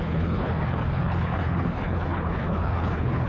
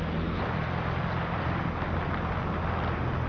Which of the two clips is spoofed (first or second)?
first